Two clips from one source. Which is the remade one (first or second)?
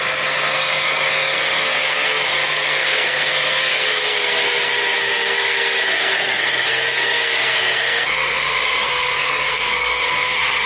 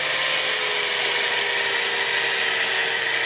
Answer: first